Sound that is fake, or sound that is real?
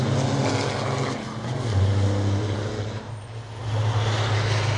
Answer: real